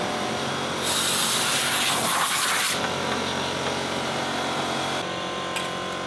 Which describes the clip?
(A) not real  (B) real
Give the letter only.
A